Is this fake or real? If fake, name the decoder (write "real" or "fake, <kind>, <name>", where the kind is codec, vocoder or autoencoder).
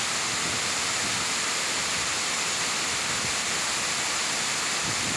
real